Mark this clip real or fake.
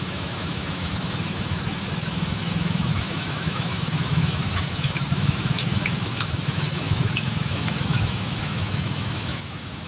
fake